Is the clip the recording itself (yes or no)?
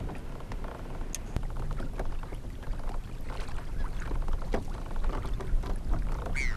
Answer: yes